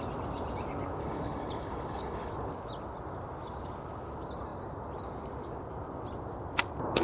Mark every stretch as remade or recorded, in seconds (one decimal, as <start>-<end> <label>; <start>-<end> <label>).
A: 0.0-1.0 recorded; 1.0-2.3 remade; 2.3-7.0 recorded